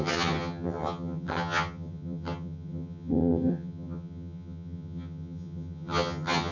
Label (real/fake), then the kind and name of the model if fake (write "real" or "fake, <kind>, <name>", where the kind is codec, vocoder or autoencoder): fake, vocoder, HiFi-GAN